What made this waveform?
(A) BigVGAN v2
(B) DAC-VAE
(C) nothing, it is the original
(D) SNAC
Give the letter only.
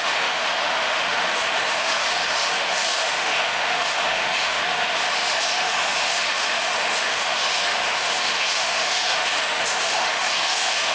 B